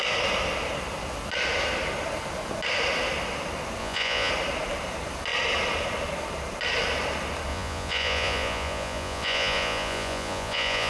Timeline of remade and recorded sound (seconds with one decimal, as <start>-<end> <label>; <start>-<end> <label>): 0.0-3.8 recorded; 3.8-4.3 remade; 4.3-7.5 recorded; 7.5-10.9 remade